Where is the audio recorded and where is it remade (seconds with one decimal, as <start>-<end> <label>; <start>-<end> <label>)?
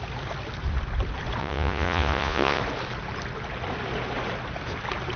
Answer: 0.0-1.4 recorded; 1.4-2.6 remade; 2.6-5.2 recorded